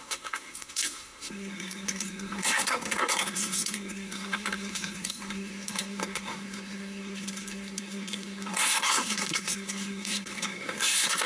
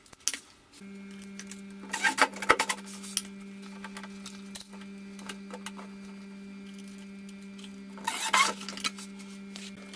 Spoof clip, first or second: first